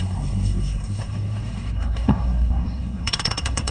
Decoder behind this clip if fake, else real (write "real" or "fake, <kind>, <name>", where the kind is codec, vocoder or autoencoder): fake, codec, SNAC